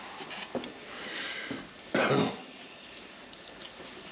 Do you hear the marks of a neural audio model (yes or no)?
no